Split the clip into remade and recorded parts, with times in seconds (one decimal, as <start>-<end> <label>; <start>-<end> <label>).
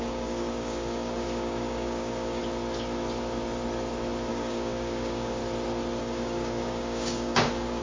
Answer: 0.0-2.4 remade; 2.4-4.3 recorded; 4.3-5.4 remade; 5.4-6.0 recorded; 6.0-7.8 remade